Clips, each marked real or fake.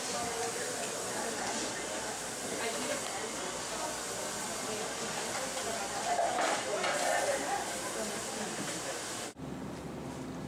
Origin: real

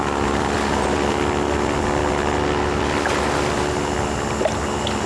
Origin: real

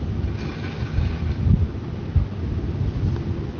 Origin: real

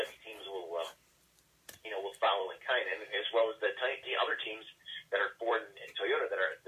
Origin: fake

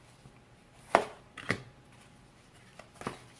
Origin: real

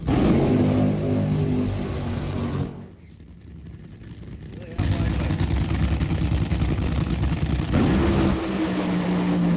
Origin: real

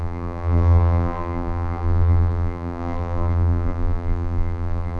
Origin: fake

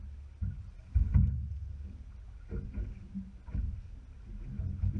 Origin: real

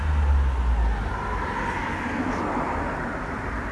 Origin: real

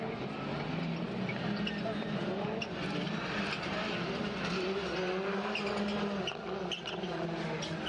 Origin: real